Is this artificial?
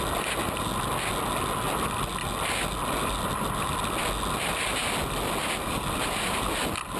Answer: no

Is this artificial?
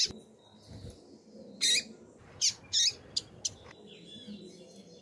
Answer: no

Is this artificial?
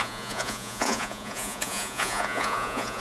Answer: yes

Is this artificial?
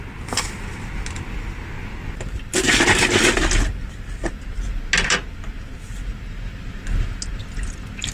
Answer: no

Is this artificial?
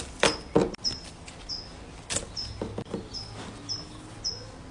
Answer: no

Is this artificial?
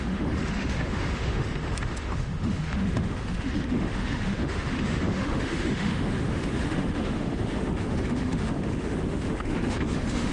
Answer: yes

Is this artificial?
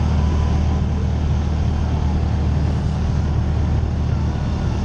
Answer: no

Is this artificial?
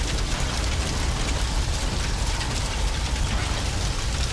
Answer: no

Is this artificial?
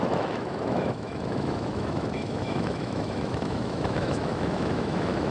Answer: yes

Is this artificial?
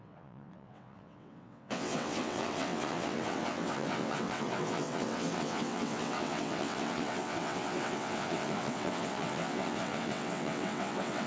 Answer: yes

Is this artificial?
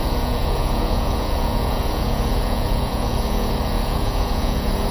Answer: yes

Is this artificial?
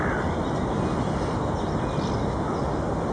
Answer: no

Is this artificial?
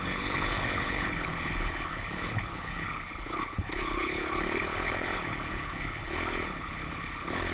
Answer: yes